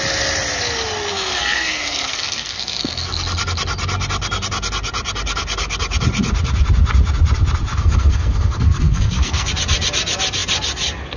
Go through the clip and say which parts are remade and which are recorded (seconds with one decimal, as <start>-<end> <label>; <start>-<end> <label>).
0.0-1.1 recorded; 1.1-3.1 remade; 3.1-7.7 recorded; 7.7-9.5 remade; 9.5-11.2 recorded